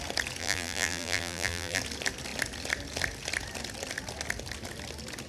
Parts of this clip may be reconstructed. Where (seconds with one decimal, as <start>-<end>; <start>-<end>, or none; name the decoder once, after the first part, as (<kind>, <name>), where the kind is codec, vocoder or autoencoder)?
0.4-1.8 (vocoder, BigVGAN v2)

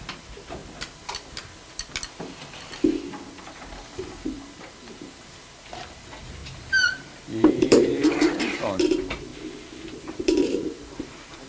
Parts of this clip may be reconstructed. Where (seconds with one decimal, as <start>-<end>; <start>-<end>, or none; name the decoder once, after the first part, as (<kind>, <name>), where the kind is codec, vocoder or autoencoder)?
0.0-0.6 (vocoder, BigVGAN v2); 4.5-9.3; 10.0-11.5

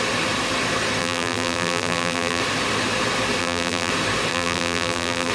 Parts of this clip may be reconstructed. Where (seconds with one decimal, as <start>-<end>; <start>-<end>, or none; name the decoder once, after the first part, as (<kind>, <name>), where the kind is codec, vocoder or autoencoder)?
1.0-2.4 (vocoder, BigVGAN v2); 3.4-3.9; 4.3-5.3